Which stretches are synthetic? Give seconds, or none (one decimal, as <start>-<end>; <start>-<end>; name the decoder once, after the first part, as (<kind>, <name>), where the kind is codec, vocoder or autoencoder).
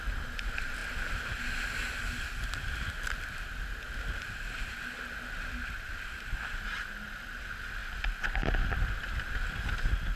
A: none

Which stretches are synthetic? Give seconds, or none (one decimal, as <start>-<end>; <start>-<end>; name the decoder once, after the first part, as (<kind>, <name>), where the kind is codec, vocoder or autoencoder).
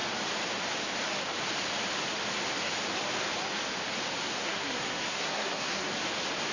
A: 4.4-5.9 (codec, SNAC)